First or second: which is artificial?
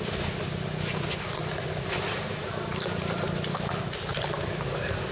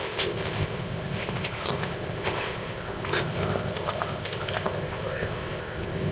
second